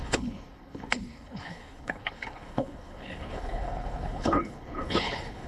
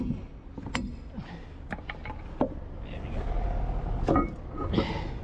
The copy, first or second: first